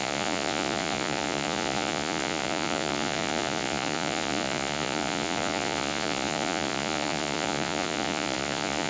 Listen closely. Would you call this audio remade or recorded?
remade